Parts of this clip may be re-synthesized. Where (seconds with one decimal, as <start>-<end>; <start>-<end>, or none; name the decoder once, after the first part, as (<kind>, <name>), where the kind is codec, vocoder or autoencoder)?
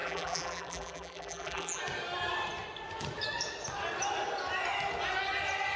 0.0-1.8 (vocoder, BigVGAN v2)